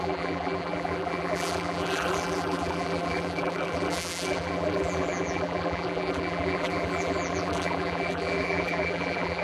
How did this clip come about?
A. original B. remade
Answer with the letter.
B